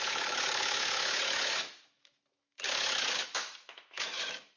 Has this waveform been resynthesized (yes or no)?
yes